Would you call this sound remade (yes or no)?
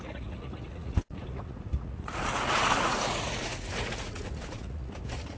yes